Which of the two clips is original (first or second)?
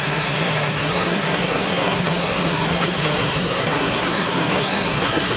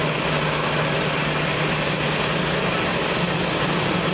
second